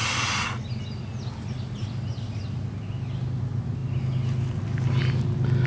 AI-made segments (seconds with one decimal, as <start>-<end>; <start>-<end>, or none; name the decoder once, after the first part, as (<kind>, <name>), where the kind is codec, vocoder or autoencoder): none

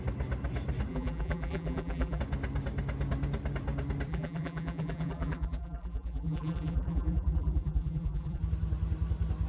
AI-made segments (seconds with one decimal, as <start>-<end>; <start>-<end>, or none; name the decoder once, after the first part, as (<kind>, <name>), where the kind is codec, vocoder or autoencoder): 0.9-2.2 (vocoder, BigVGAN v2); 4.1-8.4

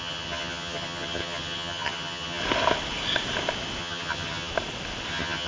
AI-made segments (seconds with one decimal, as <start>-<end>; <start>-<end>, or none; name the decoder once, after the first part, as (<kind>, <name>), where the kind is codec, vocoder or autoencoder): 0.0-2.4 (vocoder, HiFi-GAN); 3.8-4.5; 5.1-5.5

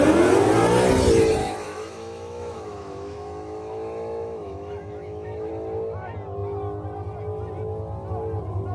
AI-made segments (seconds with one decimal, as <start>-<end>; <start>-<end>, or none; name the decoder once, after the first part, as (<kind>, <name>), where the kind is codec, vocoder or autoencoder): 1.4-5.5 (autoencoder, DAC-VAE)

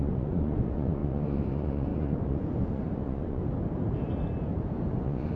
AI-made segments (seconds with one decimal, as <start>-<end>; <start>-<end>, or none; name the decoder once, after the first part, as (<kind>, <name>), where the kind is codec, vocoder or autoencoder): 0.0-3.4 (vocoder, Vocos); 4.9-5.4

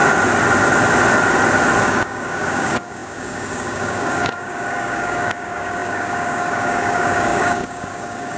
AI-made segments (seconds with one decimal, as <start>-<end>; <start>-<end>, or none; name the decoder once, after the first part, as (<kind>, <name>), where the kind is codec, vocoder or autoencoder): 1.8-8.4 (codec, DAC)

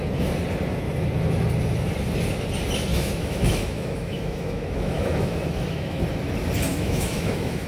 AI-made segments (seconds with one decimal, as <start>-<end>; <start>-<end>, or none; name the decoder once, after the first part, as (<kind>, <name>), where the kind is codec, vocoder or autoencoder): 2.9-6.0 (autoencoder, DAC-VAE); 6.7-7.7